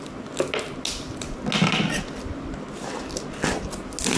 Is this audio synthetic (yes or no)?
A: no